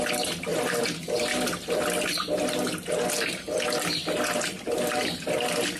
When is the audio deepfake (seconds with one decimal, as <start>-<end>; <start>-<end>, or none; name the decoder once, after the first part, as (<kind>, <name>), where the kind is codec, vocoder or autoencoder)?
none